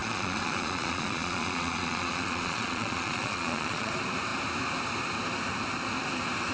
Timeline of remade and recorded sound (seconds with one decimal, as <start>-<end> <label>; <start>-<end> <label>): 0.0-3.9 remade; 3.9-6.5 recorded

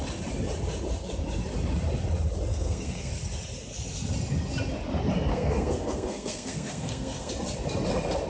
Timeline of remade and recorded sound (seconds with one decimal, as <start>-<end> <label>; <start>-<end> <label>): 0.0-2.5 recorded; 2.5-3.1 remade; 3.1-5.3 recorded; 5.3-7.3 remade; 7.3-8.3 recorded

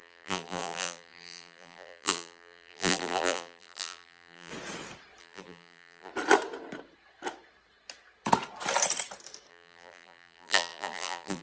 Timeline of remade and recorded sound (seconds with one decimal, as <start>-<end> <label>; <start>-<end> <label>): 0.0-4.5 remade; 4.5-5.2 recorded; 5.2-6.1 remade; 6.1-9.5 recorded; 9.5-11.4 remade

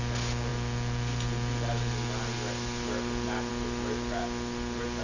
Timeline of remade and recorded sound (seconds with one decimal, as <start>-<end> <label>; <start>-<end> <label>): 0.0-5.0 recorded